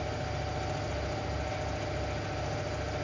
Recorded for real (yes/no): yes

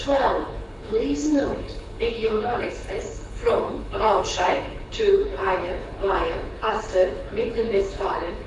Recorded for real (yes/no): no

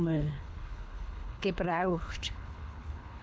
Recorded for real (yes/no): no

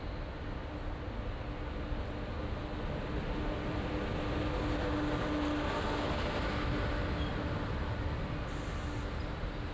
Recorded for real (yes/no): yes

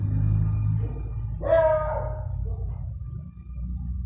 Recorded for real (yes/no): yes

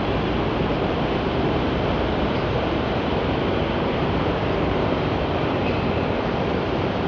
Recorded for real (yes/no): no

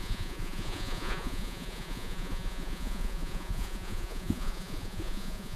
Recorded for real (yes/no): no